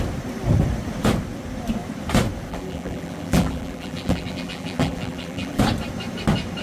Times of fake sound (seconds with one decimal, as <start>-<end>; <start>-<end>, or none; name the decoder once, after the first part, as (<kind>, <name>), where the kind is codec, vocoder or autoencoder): 2.5-5.6 (vocoder, BigVGAN v2)